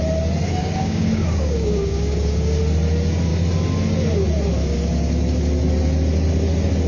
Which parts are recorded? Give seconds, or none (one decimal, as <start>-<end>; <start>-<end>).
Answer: 0.0-0.6; 2.6-6.9